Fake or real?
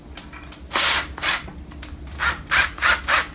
real